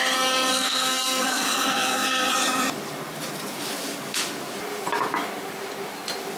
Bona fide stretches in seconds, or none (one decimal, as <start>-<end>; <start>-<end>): 0.0-0.5; 2.3-6.4